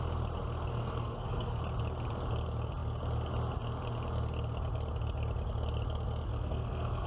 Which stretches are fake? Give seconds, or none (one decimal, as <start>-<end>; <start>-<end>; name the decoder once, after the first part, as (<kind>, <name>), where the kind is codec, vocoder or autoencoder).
0.7-1.6 (codec, SNAC); 6.3-7.1